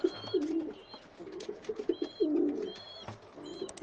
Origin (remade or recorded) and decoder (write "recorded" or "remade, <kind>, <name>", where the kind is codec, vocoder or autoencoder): recorded